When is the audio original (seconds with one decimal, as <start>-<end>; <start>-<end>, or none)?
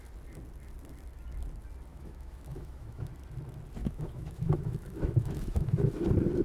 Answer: 0.0-1.9; 3.1-3.8; 5.9-6.4